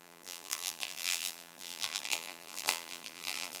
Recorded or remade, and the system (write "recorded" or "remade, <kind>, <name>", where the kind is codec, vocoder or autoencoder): remade, vocoder, BigVGAN v2